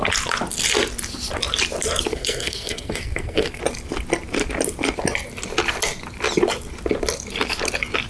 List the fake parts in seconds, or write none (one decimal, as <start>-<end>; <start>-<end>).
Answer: 2.1-3.6